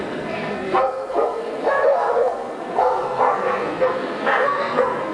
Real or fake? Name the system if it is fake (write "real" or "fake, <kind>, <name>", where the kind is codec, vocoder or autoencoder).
fake, codec, SNAC